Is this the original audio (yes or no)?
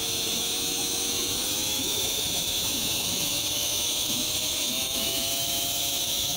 no